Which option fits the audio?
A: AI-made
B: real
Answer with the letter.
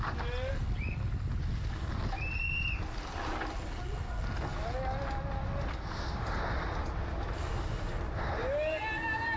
B